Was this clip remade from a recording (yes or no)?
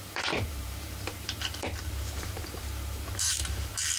yes